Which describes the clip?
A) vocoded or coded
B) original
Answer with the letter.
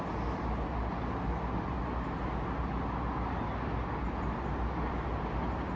B